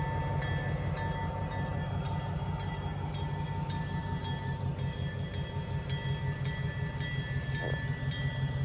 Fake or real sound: real